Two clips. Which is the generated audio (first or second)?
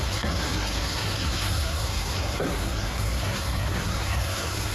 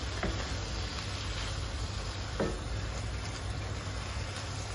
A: first